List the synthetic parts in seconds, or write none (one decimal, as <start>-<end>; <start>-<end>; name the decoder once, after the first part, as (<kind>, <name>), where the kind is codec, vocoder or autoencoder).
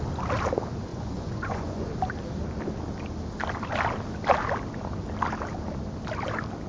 0.9-1.9 (vocoder, Vocos)